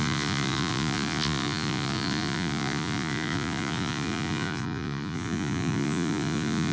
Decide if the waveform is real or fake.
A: fake